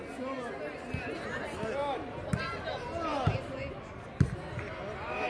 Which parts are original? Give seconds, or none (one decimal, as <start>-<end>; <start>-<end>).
0.0-5.3